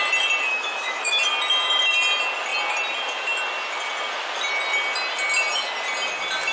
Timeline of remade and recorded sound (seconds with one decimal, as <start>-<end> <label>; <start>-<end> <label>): 0.0-0.5 recorded; 0.5-1.2 remade; 1.2-6.5 recorded